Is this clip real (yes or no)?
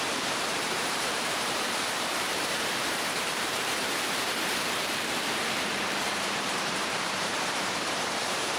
no